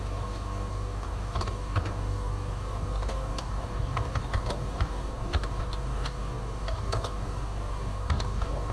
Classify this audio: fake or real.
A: fake